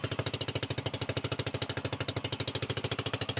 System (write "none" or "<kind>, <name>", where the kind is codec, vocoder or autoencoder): none